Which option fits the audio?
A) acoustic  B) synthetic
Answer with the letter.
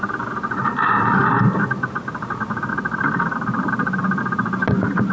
A